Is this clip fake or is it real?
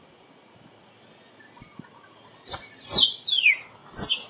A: real